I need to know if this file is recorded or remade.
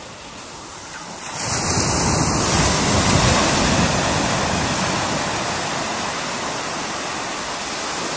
recorded